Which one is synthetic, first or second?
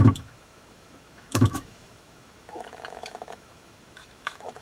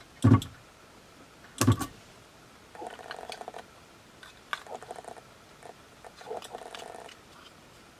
first